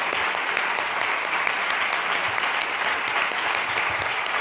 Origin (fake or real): real